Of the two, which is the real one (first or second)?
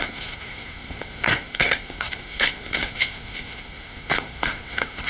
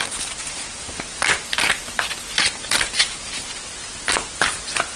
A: second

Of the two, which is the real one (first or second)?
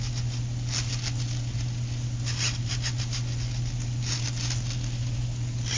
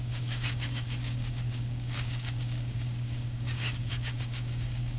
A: first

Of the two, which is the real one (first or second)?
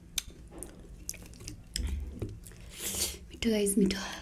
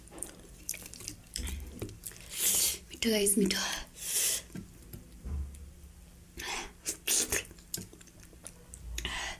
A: first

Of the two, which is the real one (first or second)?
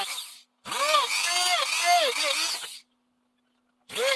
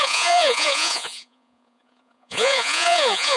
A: first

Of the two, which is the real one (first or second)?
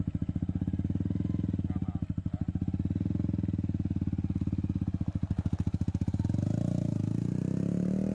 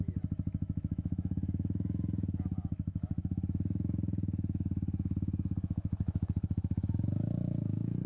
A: first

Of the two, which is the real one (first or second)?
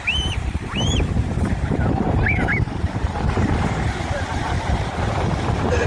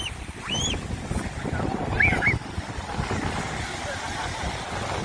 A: second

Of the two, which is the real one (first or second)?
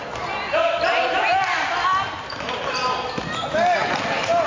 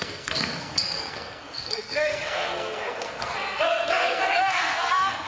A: first